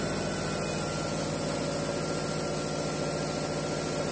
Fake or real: real